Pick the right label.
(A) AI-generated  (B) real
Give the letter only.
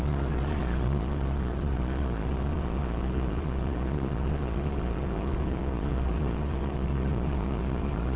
A